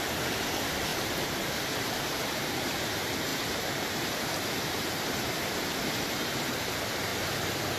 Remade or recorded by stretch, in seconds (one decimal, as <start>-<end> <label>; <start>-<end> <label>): 0.0-0.9 remade; 0.9-1.5 recorded; 1.5-7.1 remade; 7.1-7.8 recorded